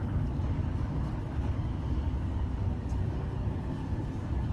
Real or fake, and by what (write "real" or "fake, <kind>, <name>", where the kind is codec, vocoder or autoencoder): fake, codec, DAC